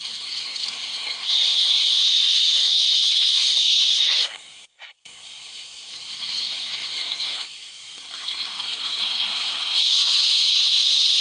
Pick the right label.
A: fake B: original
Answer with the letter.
A